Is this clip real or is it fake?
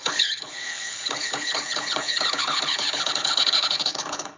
fake